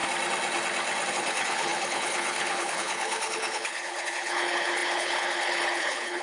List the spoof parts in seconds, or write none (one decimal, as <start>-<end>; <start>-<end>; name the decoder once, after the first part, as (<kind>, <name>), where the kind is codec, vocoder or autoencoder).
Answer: 1.1-6.2 (codec, HILCodec)